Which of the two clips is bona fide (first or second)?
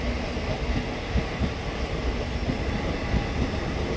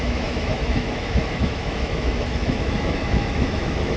first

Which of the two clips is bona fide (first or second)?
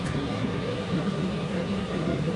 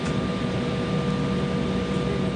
second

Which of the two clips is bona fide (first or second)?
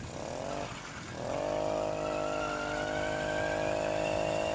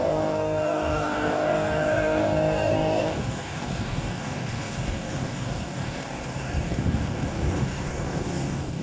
first